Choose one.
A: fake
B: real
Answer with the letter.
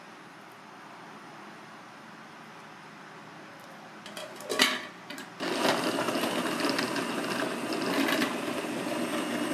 B